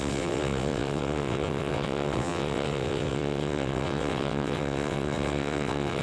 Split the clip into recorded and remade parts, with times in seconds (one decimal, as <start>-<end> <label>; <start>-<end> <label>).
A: 0.0-6.0 remade